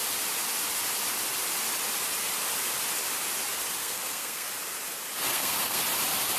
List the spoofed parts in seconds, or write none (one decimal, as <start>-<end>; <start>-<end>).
3.8-4.5; 5.3-5.8